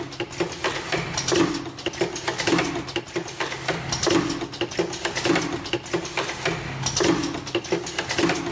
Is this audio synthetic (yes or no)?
no